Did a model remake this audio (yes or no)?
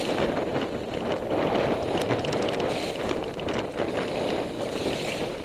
no